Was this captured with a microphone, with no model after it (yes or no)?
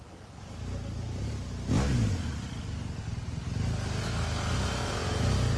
yes